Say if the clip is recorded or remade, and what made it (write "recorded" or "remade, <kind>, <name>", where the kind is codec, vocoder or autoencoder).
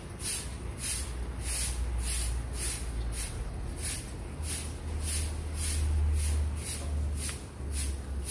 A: recorded